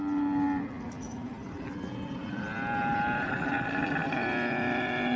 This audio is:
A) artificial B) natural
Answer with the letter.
B